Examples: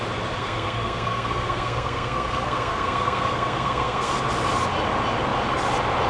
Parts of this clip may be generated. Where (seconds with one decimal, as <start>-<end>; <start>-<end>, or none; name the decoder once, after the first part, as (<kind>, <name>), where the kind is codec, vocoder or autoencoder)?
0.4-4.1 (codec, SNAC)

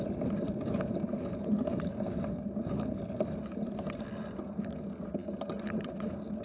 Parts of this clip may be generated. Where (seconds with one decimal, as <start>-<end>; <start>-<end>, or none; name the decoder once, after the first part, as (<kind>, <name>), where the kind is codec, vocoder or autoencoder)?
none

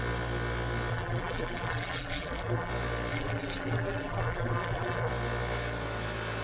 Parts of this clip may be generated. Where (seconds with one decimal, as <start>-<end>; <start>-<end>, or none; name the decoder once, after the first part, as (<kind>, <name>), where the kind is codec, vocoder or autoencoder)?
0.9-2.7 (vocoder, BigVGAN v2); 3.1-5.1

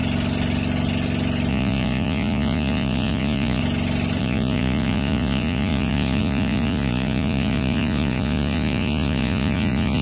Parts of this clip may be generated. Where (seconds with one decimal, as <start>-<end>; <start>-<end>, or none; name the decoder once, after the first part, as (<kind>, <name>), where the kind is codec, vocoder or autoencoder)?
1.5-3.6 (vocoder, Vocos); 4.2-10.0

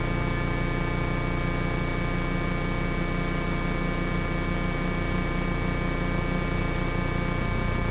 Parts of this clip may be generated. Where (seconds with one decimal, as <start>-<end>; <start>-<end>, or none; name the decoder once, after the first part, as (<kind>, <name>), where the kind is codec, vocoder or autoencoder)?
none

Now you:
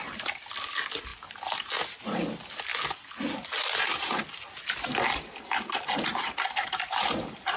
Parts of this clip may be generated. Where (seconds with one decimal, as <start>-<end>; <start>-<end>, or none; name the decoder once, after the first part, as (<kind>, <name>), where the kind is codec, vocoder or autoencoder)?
none